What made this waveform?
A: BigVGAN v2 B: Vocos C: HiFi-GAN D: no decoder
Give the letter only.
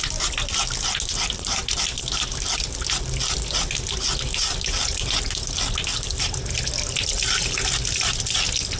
D